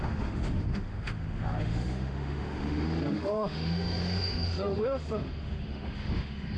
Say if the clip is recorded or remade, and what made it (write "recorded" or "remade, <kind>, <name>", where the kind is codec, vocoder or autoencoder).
remade, autoencoder, DAC-VAE